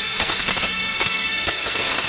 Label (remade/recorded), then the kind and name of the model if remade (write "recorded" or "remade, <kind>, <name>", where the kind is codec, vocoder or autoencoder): remade, codec, SNAC